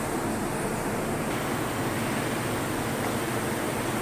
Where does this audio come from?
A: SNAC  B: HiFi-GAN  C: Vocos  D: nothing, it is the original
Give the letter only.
D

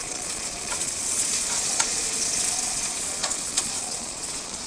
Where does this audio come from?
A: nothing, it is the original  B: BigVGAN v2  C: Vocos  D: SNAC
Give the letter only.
C